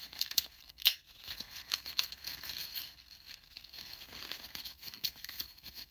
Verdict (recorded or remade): remade